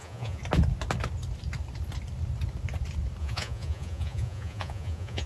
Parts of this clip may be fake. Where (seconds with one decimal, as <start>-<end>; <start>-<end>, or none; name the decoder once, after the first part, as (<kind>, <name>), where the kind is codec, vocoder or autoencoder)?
0.0-0.4 (vocoder, Vocos); 3.2-5.3